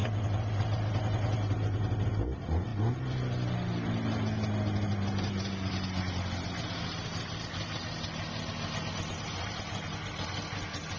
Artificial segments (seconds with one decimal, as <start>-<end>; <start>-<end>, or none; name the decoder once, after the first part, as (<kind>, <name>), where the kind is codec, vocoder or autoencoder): none